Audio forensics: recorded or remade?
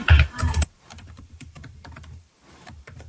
remade